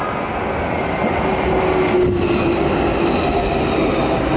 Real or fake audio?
real